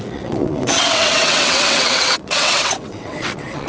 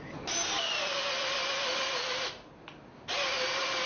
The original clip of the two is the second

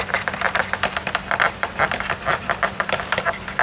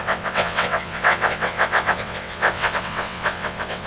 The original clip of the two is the first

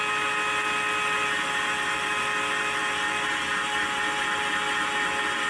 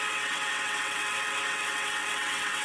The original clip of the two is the first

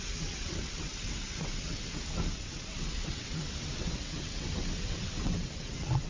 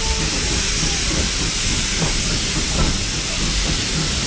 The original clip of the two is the second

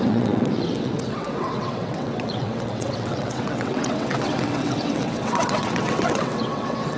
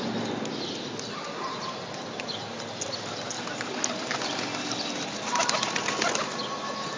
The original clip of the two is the second